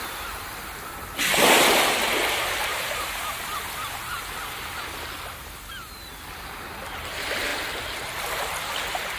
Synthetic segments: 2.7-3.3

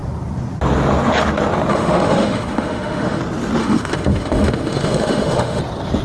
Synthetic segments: 1.7-3.2; 3.6-5.6

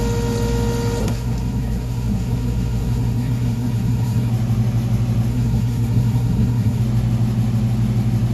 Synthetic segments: 1.0-4.3; 5.3-6.8

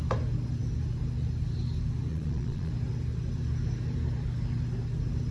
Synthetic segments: 2.1-2.7

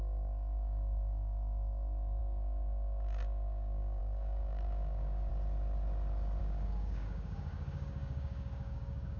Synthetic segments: 0.0-5.3; 6.4-9.2

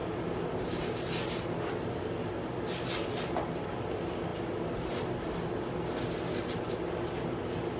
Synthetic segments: none

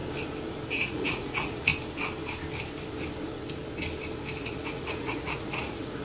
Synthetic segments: 0.7-1.7; 4.4-6.0